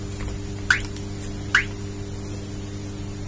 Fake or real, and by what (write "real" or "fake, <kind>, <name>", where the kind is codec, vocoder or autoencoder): real